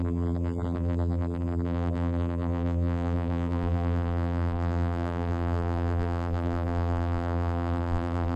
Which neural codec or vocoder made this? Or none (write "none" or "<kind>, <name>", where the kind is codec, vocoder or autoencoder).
vocoder, BigVGAN v2